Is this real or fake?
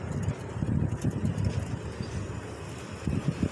real